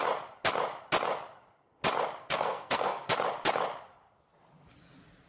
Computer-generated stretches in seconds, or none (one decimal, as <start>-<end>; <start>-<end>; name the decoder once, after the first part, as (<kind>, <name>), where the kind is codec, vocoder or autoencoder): 2.2-3.1 (codec, SNAC)